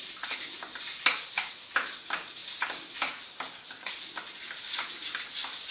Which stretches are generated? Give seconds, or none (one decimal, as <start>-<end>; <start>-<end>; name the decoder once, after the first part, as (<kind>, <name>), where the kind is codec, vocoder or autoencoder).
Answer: none